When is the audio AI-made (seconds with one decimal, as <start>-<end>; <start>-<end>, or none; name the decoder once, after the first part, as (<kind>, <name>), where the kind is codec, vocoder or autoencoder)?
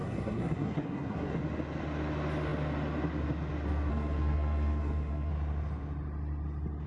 0.0-1.4 (codec, SNAC); 3.9-5.3